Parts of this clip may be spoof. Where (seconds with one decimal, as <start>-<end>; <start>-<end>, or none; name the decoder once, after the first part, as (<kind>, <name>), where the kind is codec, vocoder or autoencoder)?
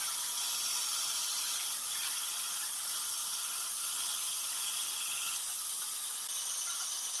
none